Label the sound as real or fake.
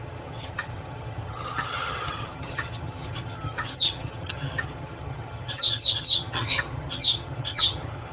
fake